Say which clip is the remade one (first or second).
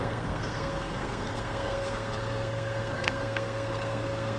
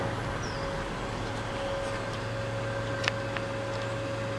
first